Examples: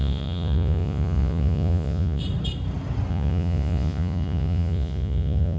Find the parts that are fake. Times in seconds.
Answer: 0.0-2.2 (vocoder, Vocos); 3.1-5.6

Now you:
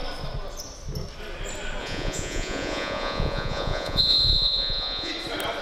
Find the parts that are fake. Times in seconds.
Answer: 1.8-5.1 (vocoder, Vocos)

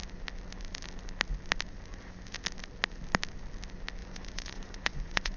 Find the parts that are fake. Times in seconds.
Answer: 4.0-5.4 (vocoder, Vocos)

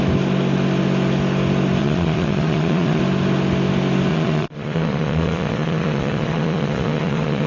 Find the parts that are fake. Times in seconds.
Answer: 1.8-3.0 (vocoder, Vocos); 4.1-7.5

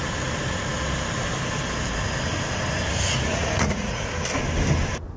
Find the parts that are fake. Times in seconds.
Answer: 3.3-4.1 (vocoder, Vocos)

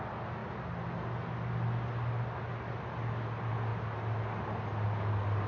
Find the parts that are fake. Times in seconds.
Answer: none

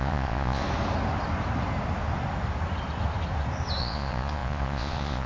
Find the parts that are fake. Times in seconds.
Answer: 0.0-0.6 (vocoder, Vocos); 3.8-5.3

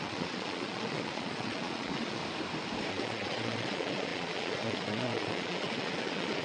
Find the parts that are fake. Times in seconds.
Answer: 0.0-2.2 (vocoder, Vocos); 2.9-6.4